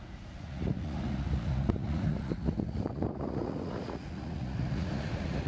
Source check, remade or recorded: remade